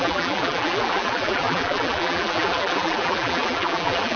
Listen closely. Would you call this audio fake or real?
fake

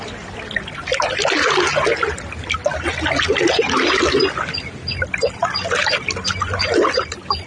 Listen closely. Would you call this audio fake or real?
real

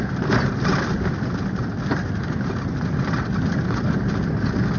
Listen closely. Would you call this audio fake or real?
real